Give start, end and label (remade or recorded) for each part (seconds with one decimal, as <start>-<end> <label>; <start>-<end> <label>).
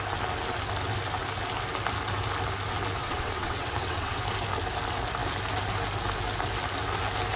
0.0-3.0 recorded; 3.0-4.2 remade; 4.2-7.4 recorded